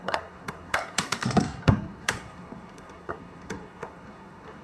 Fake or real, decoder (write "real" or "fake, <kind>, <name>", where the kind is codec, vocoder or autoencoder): fake, codec, SNAC